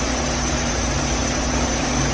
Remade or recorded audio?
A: remade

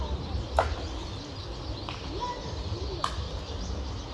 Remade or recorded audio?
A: recorded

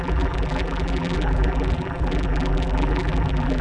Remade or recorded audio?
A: remade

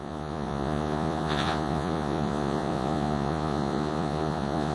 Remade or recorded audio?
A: remade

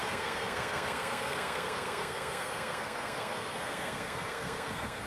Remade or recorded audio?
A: remade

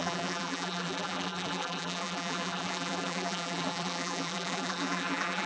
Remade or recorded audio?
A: remade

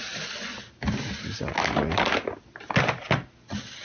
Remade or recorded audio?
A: recorded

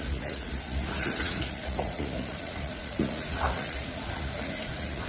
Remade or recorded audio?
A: remade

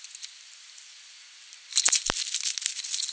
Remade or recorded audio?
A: recorded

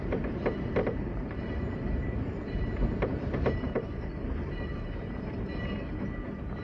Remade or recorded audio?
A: remade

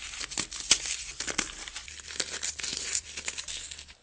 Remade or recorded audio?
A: recorded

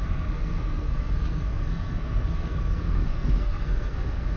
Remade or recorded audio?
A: remade